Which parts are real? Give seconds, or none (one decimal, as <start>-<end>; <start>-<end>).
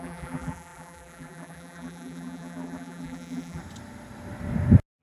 3.6-5.0